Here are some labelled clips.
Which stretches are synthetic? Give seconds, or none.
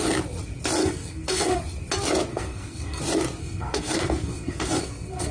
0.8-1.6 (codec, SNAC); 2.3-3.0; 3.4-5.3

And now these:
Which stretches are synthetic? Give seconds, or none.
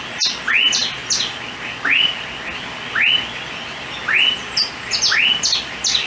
none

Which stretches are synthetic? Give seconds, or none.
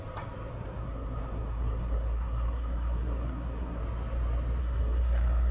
0.5-3.8 (codec, SNAC); 4.6-5.5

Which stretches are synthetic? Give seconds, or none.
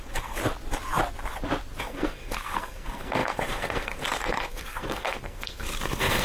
0.0-0.4 (codec, SNAC); 1.8-6.2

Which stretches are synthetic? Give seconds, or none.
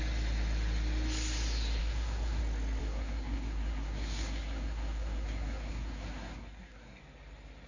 1.8-2.4 (codec, SNAC); 2.8-7.0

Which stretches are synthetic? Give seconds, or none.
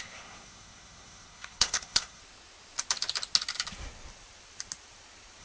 0.0-2.2 (codec, SNAC)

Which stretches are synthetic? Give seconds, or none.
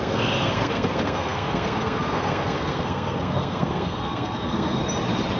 0.0-4.8 (codec, SNAC)